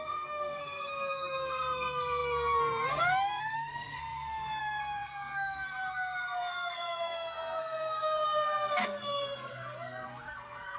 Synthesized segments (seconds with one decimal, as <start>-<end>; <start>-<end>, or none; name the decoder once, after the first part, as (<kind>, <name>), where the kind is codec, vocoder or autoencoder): 0.0-10.8 (codec, SNAC)